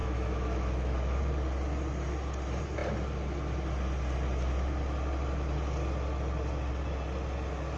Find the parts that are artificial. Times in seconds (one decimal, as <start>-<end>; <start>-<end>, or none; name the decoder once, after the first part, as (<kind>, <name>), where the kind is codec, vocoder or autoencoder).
0.0-1.2 (autoencoder, DAC-VAE)